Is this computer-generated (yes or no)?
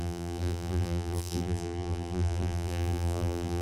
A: yes